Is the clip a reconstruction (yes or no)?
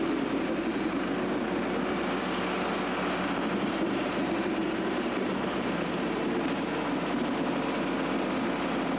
no